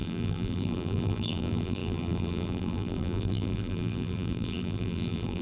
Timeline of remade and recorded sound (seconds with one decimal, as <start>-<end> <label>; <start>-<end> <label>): 0.0-5.4 remade